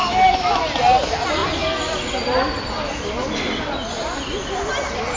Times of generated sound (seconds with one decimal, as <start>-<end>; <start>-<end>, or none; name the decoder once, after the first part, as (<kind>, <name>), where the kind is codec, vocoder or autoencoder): 0.0-0.6 (autoencoder, DAC-VAE)